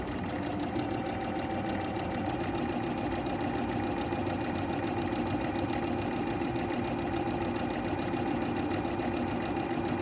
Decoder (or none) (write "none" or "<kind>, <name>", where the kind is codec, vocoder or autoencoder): none